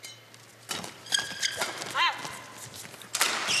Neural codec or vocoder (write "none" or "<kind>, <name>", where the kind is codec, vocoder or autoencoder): none